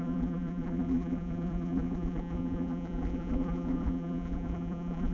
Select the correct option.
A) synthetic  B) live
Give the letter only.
A